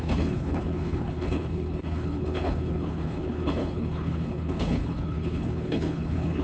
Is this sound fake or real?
fake